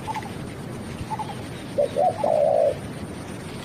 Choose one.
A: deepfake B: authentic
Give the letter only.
B